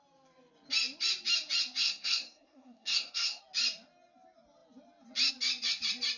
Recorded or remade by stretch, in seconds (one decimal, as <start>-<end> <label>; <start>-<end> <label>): 0.0-1.8 recorded; 1.8-3.4 remade; 3.4-6.2 recorded